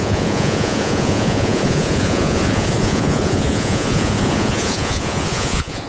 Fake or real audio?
fake